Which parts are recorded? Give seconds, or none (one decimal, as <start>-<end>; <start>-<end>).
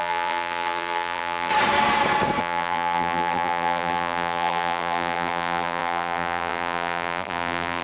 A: 1.5-2.4